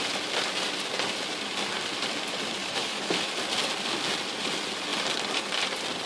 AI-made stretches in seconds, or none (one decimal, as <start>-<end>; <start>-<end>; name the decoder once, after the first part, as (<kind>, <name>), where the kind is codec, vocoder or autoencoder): 2.6-3.3 (autoencoder, DAC-VAE)